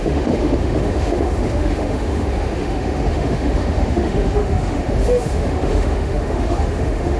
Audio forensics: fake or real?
fake